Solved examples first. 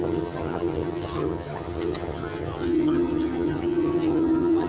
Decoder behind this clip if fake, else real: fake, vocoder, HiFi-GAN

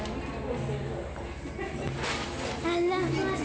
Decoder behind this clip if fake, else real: real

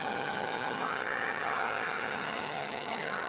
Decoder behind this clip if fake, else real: fake, vocoder, HiFi-GAN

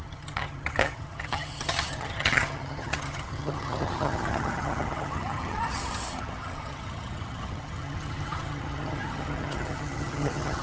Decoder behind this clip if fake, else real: fake, vocoder, HiFi-GAN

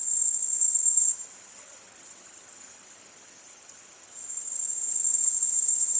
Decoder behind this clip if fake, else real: fake, vocoder, HiFi-GAN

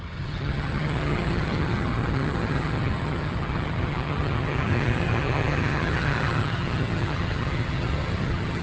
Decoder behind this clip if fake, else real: fake, vocoder, HiFi-GAN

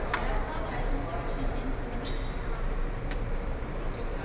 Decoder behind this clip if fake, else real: real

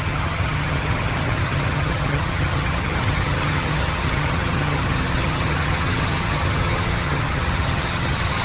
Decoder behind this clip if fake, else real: fake, vocoder, HiFi-GAN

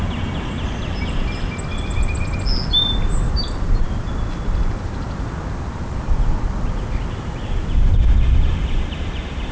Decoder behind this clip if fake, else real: real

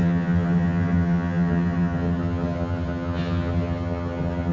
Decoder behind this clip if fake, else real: fake, vocoder, HiFi-GAN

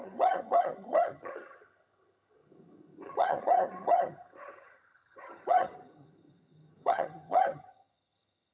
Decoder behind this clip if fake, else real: fake, vocoder, HiFi-GAN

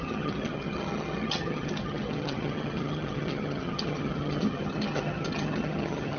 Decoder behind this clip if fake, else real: fake, vocoder, HiFi-GAN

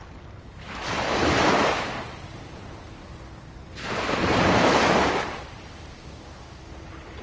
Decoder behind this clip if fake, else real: real